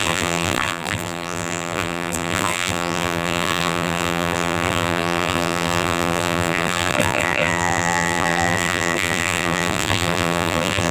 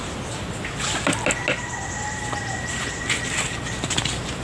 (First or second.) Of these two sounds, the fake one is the first